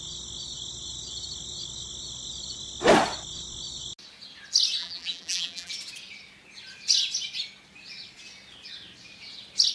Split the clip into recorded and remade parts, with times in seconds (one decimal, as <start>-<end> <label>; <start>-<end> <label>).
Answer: 0.0-4.8 recorded; 4.8-5.7 remade; 5.7-9.7 recorded